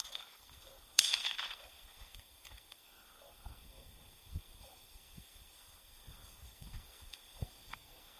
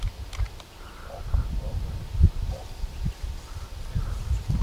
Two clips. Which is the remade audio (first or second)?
first